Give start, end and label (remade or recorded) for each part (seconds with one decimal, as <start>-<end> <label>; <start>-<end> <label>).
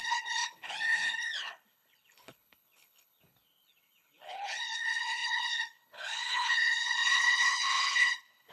0.0-8.5 remade